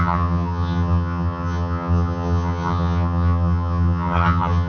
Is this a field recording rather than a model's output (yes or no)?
no